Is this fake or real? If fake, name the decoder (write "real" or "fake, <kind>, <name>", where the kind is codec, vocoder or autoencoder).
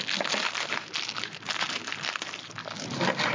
real